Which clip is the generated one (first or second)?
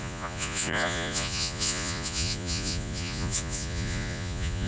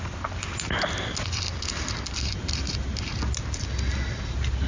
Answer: first